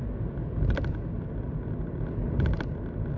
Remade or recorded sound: remade